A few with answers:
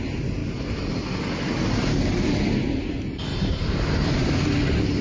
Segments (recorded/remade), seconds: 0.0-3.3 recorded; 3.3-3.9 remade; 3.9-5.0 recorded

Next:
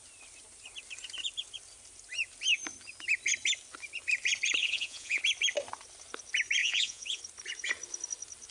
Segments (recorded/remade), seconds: 0.0-4.6 recorded; 4.6-5.2 remade; 5.2-6.6 recorded; 6.6-7.2 remade; 7.2-8.5 recorded

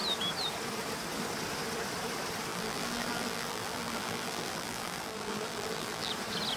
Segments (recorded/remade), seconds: 0.0-2.5 recorded; 2.5-6.1 remade; 6.1-6.6 recorded

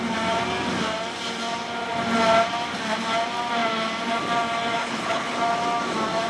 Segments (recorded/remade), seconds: 0.0-4.8 recorded; 4.8-5.4 remade; 5.4-6.3 recorded